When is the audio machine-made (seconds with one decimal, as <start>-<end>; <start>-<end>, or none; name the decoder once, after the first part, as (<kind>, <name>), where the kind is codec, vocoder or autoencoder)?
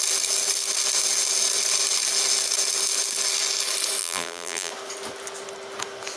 4.0-4.7 (vocoder, BigVGAN v2)